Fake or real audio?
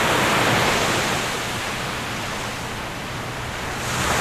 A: real